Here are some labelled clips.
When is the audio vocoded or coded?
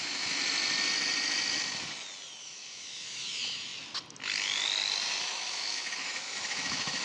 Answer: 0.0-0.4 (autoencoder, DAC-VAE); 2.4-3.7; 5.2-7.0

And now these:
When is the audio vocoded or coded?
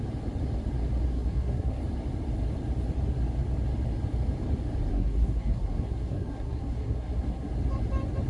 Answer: 1.1-1.8 (codec, SNAC); 4.9-7.5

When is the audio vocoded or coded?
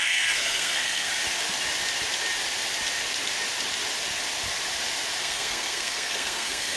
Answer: 0.0-1.1 (codec, SNAC); 5.2-6.8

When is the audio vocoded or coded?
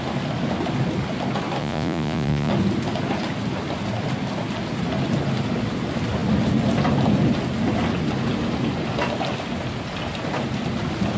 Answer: 1.6-2.5 (vocoder, Vocos)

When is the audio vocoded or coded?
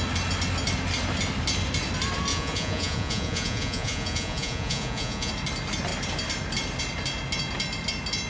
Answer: 2.3-5.3 (vocoder, Vocos)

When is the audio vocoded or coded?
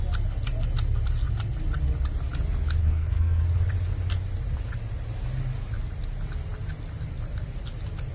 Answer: 2.8-3.4 (codec, SNAC)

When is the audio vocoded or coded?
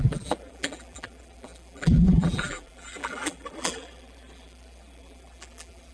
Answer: 0.0-5.9 (vocoder, BigVGAN v2)